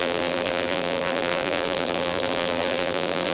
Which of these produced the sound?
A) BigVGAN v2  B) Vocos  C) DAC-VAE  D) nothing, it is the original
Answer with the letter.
A